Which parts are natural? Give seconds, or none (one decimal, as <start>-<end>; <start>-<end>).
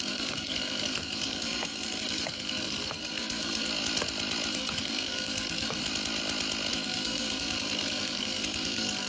3.7-4.5; 5.8-6.7